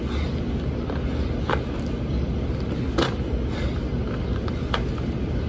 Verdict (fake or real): real